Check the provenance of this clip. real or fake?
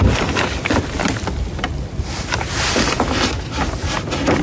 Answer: real